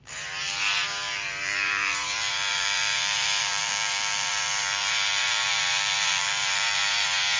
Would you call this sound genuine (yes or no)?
no